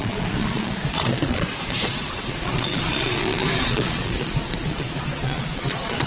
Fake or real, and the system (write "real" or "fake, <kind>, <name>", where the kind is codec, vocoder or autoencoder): fake, vocoder, Vocos